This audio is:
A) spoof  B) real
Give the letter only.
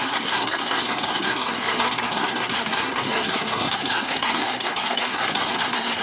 A